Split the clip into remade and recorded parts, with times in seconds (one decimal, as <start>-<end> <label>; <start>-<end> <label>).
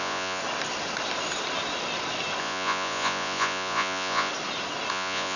0.0-0.4 remade; 0.4-2.4 recorded; 2.4-4.3 remade; 4.3-4.9 recorded; 4.9-5.4 remade